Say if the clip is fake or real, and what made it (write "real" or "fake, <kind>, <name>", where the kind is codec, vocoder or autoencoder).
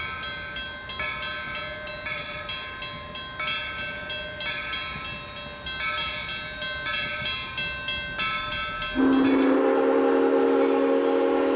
real